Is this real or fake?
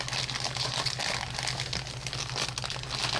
real